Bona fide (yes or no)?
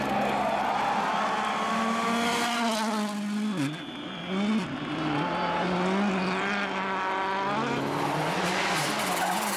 yes